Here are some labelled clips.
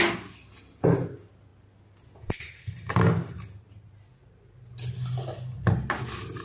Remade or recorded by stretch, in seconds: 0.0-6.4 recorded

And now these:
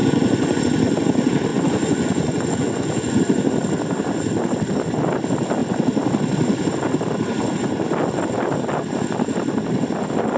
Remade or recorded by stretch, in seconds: 0.0-0.6 remade; 0.6-1.5 recorded; 1.5-3.2 remade; 3.2-10.4 recorded